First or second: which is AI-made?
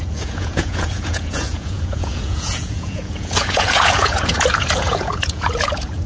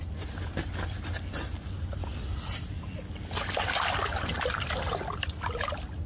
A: first